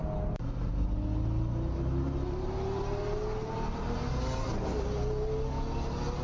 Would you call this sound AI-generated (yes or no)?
no